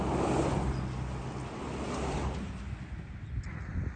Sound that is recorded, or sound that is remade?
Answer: recorded